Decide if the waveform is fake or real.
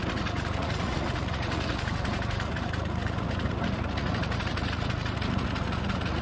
fake